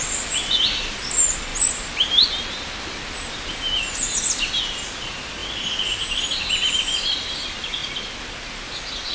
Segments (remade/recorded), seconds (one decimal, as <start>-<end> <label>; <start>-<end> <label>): 0.0-9.1 recorded